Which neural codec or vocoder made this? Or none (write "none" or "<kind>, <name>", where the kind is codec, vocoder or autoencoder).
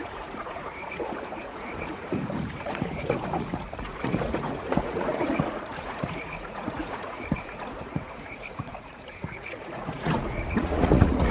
vocoder, Vocos